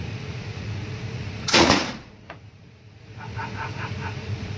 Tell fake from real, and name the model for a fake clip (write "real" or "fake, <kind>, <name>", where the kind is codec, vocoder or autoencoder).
fake, vocoder, Vocos